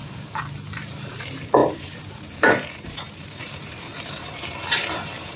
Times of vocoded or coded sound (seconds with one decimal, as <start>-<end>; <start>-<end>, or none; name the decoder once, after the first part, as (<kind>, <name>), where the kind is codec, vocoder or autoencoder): 0.0-5.4 (vocoder, BigVGAN v2)